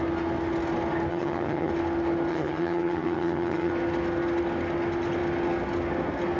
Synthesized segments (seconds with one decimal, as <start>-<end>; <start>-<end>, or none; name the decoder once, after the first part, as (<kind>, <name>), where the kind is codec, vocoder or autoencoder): 1.1-1.7 (vocoder, HiFi-GAN); 2.3-3.7